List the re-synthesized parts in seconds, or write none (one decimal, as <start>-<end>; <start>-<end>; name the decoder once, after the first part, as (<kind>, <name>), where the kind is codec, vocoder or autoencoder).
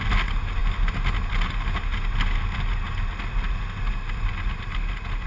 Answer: none